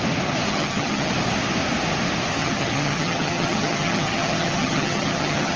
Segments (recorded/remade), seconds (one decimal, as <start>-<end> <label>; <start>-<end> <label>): 0.0-0.5 recorded; 0.5-1.1 remade; 1.1-2.4 recorded; 2.4-5.6 remade